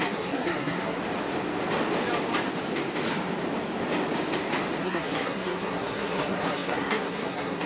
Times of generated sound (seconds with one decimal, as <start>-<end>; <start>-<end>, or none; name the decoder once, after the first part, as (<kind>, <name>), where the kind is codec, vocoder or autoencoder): 0.0-1.0 (codec, SNAC); 4.8-7.7